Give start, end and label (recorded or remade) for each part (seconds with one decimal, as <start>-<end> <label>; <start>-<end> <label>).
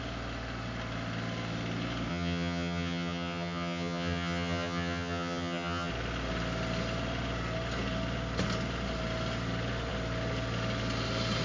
0.0-2.1 recorded; 2.1-5.9 remade; 5.9-11.4 recorded